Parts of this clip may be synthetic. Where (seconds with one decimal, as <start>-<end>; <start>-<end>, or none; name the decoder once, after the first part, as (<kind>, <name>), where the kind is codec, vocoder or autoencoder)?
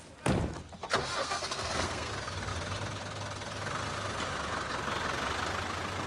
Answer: 1.2-2.1 (codec, SNAC)